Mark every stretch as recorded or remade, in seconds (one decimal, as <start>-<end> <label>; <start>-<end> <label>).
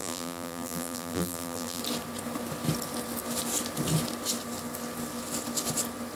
0.0-1.8 remade; 1.8-6.2 recorded